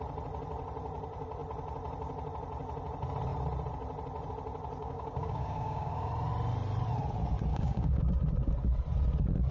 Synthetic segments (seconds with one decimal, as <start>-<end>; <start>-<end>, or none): 4.8-6.1; 7.5-8.1